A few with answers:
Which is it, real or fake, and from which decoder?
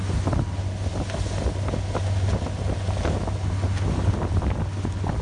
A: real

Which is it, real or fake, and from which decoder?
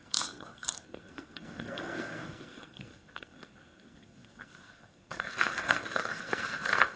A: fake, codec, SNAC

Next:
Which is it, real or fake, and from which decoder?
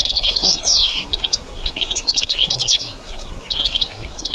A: fake, codec, SNAC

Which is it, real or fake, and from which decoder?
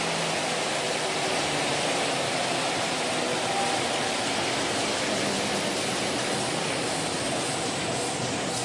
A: real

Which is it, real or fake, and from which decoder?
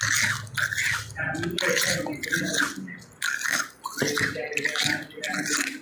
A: real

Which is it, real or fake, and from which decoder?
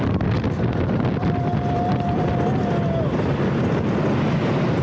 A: real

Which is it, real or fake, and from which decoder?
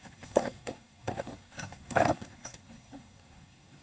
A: fake, codec, SNAC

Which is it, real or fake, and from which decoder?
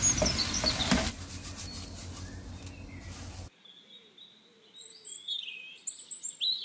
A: real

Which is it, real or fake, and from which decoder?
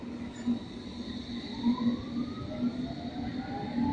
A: real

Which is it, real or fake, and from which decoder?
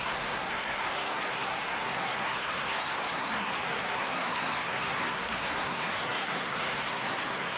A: fake, codec, SNAC